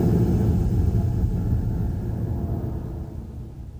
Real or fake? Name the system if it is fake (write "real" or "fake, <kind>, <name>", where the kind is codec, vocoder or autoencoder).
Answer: real